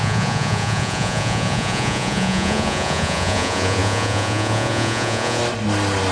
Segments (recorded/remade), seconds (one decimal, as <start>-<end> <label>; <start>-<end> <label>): 0.0-5.4 remade; 5.4-6.1 recorded